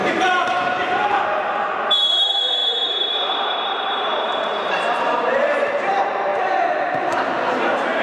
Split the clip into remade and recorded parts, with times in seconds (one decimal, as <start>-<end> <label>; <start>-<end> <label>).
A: 0.0-8.0 remade